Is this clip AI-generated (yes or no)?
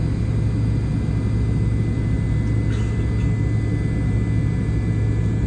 no